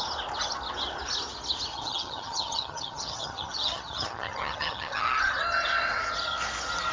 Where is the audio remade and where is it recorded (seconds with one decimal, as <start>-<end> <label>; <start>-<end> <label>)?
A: 0.0-1.7 recorded; 1.7-5.3 remade; 5.3-6.9 recorded